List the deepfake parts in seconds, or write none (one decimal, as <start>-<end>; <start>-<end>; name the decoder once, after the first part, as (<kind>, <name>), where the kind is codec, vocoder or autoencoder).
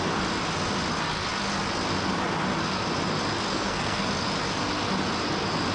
3.5-4.1 (codec, SNAC)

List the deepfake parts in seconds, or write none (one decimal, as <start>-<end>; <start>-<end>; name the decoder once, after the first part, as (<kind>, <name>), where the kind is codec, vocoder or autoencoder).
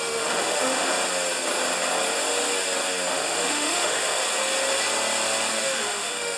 0.0-0.9 (autoencoder, DAC-VAE); 3.1-4.2; 5.6-6.4